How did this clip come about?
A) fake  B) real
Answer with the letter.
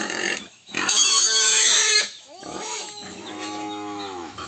A